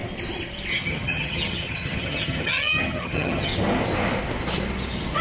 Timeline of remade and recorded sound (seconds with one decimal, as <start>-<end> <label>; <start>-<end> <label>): 0.0-0.7 recorded; 0.7-3.5 remade; 3.5-5.2 recorded